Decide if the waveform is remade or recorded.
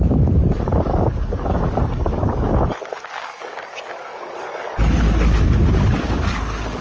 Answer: remade